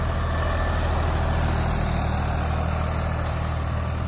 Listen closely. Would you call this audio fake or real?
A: real